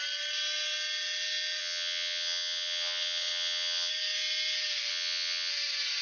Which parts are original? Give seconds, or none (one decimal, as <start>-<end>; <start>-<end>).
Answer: 0.0-1.6; 3.9-4.9; 5.5-6.0